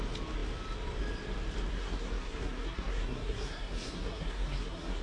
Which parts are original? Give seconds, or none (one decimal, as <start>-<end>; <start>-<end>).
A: 0.0-1.7

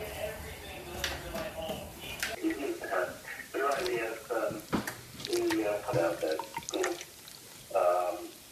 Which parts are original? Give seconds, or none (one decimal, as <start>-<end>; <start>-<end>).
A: 0.0-2.6; 4.8-8.5